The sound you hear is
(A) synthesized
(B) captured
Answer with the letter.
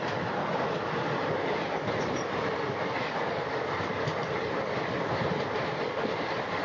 B